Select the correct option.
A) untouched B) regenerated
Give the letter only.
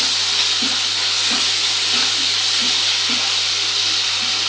A